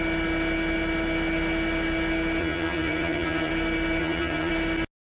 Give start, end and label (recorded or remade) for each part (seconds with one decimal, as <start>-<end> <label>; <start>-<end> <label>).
0.0-2.4 recorded; 2.4-3.5 remade; 3.5-4.0 recorded; 4.0-4.5 remade; 4.5-5.0 recorded